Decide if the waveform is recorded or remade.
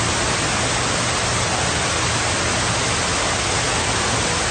recorded